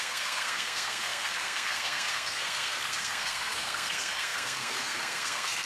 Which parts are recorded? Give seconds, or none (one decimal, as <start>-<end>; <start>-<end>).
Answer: none